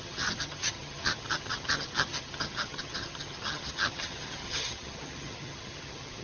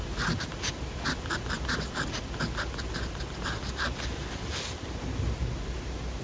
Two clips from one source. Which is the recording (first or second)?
second